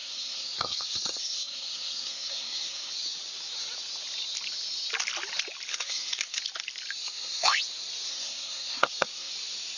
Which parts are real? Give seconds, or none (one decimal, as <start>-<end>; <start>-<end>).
2.9-5.7; 6.4-7.0; 7.6-8.1; 9.3-9.8